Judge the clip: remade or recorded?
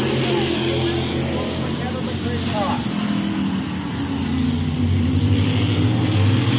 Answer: recorded